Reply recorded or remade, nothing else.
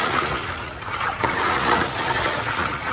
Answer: remade